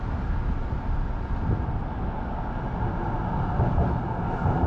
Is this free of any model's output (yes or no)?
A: yes